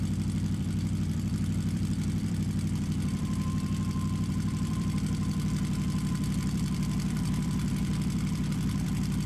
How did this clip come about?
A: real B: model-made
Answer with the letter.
B